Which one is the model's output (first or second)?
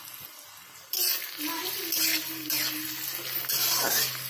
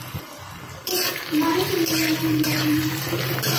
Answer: second